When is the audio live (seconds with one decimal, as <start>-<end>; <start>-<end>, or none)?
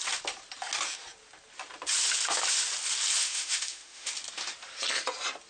0.0-3.2; 4.1-5.5